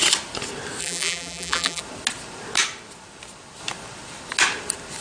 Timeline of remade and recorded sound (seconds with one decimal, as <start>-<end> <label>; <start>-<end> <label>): 0.0-0.8 recorded; 0.8-1.8 remade; 1.8-5.0 recorded